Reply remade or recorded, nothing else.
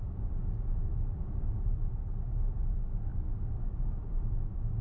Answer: recorded